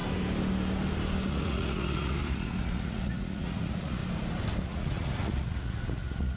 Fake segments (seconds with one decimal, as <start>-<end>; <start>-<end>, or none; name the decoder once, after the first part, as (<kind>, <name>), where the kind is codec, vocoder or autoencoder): 1.3-4.0 (vocoder, Vocos); 4.6-6.4